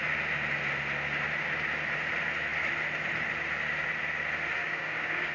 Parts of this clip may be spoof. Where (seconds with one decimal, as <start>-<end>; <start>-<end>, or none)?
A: 4.6-5.3